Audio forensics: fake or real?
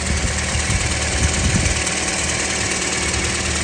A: real